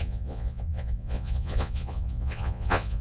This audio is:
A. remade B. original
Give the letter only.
A